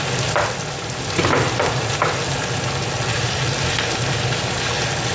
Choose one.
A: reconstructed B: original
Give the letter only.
B